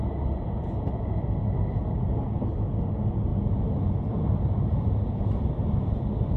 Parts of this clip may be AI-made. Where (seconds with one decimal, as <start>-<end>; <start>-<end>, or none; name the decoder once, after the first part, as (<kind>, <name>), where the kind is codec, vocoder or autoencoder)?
1.8-2.5 (vocoder, BigVGAN v2); 3.3-6.4